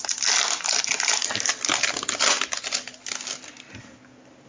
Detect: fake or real real